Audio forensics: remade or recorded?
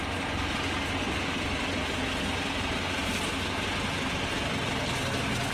recorded